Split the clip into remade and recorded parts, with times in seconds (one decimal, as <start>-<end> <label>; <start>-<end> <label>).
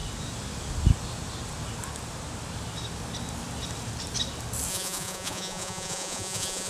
0.0-4.7 recorded; 4.7-6.7 remade